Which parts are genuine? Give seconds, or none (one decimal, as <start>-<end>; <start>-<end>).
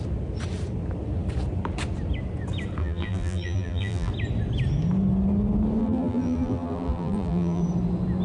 0.0-2.8; 4.1-5.8; 7.6-8.2